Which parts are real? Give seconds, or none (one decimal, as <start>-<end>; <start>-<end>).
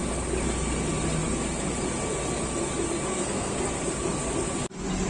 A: 0.0-3.1; 3.6-5.1